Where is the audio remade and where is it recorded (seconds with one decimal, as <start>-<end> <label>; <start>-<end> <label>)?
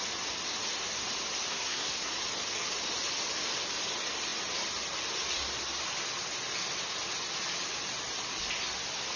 0.0-1.5 recorded; 1.5-2.1 remade; 2.1-9.2 recorded